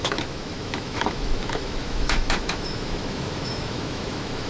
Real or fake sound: fake